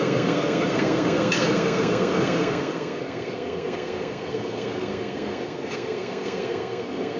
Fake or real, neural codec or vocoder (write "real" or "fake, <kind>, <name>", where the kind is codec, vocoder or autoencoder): fake, codec, SNAC